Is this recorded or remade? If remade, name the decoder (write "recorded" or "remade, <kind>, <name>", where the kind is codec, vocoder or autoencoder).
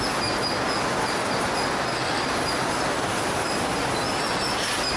recorded